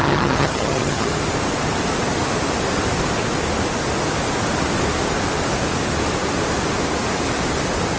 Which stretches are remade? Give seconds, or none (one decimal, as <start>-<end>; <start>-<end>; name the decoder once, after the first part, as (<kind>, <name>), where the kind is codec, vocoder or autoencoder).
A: 0.0-1.1 (vocoder, HiFi-GAN)